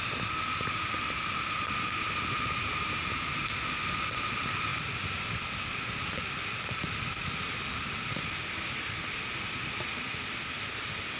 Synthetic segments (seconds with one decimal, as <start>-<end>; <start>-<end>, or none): none